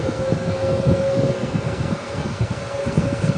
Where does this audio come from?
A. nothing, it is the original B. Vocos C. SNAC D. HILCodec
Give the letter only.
C